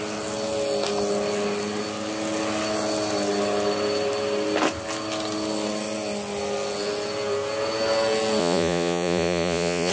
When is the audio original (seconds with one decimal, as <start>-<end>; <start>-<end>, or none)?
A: 0.0-8.4